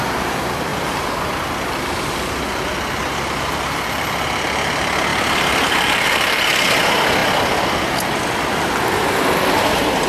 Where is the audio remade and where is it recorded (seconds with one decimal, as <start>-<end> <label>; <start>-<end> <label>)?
0.0-5.1 recorded; 5.1-6.7 remade; 6.7-10.1 recorded